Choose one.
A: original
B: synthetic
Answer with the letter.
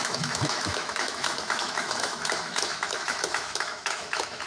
B